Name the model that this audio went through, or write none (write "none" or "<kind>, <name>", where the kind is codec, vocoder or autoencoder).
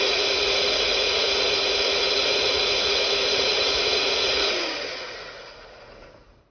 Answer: vocoder, Vocos